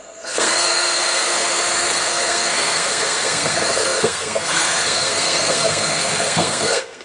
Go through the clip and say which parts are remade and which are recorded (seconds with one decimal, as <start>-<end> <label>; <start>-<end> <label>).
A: 0.0-7.0 remade